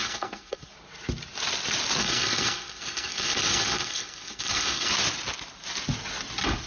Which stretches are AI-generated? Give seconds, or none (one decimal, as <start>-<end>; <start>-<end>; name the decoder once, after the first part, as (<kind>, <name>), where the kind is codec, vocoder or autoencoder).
0.0-0.7 (codec, SNAC); 2.0-4.9